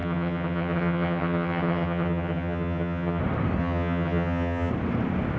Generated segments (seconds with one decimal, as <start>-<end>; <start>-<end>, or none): 0.0-3.2; 3.6-4.7